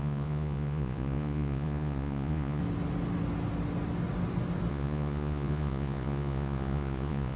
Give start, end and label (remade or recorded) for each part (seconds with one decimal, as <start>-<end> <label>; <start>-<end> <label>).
0.0-2.6 remade; 2.6-4.7 recorded; 4.7-7.4 remade